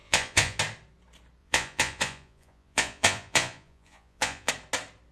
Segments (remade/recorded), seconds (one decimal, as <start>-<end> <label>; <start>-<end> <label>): 0.0-0.6 remade; 0.6-1.4 recorded; 1.4-4.5 remade; 4.5-5.1 recorded